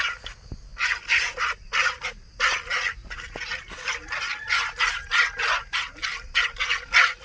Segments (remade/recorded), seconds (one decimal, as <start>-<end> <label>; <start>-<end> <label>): 0.0-7.2 recorded

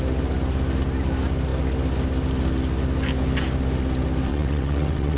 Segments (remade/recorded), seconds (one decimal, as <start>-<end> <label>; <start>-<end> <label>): 0.0-4.3 recorded; 4.3-5.2 remade

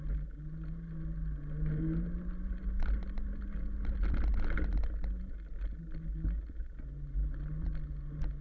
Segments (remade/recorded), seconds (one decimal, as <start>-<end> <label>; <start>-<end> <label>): 0.0-8.4 recorded

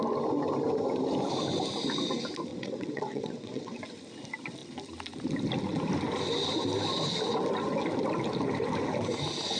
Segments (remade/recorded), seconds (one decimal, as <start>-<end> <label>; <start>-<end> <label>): 0.0-2.5 recorded; 2.5-3.8 remade; 3.8-9.6 recorded

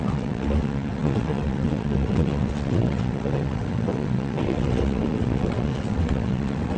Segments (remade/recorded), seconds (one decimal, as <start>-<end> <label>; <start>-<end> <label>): 0.0-6.8 remade

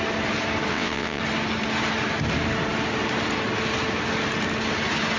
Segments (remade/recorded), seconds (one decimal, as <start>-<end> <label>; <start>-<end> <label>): 0.0-0.7 recorded; 0.7-1.2 remade; 1.2-5.2 recorded

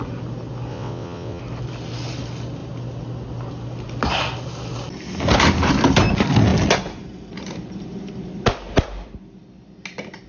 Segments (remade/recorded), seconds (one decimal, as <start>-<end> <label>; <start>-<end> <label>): 0.0-0.7 recorded; 0.7-1.4 remade; 1.4-10.3 recorded